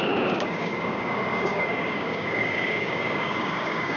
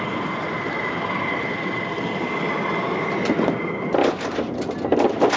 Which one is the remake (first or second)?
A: first